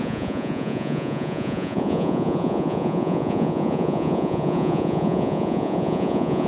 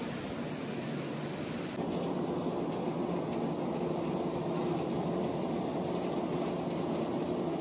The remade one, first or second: first